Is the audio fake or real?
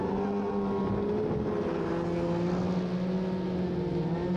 real